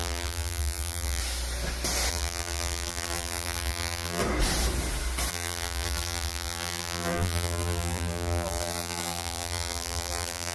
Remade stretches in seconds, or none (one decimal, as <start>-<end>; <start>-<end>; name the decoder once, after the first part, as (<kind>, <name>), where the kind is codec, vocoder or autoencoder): 0.0-1.2 (vocoder, BigVGAN v2); 2.1-4.2; 5.3-10.5